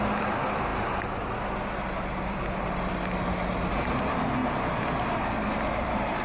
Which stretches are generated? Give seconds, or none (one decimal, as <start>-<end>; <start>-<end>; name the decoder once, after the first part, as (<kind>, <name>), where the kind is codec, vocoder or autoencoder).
none